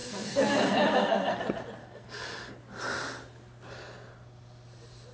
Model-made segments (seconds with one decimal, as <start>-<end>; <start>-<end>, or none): 0.0-1.4; 1.8-2.5